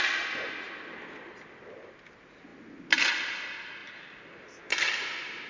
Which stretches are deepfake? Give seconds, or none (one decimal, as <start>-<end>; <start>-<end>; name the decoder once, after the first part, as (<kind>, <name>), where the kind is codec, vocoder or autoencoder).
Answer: none